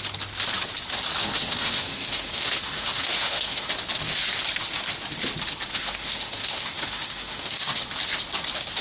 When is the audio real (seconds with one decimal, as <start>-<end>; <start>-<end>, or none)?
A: 0.0-1.2; 3.7-5.7; 7.8-8.8